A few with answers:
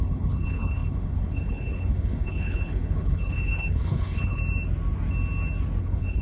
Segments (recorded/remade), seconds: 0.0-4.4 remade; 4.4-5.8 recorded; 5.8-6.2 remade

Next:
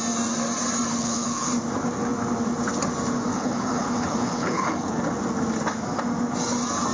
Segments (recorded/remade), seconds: 0.0-0.9 recorded; 0.9-1.5 remade; 1.5-3.3 recorded; 3.3-5.0 remade; 5.0-6.9 recorded

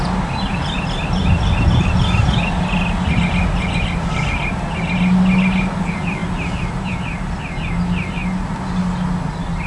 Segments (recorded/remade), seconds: 0.0-9.7 recorded

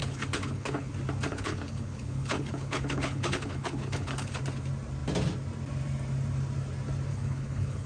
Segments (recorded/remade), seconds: 0.0-0.9 remade; 0.9-1.3 recorded; 1.3-4.4 remade; 4.4-7.1 recorded; 7.1-7.9 remade

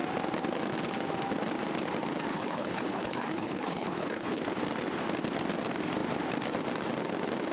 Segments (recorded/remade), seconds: 0.0-2.3 recorded; 2.3-4.4 remade; 4.4-7.5 recorded